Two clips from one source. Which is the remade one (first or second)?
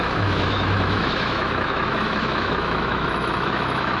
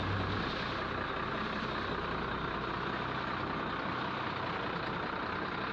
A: first